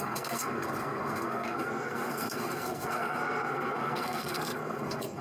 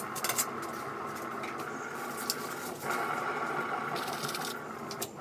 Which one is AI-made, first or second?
first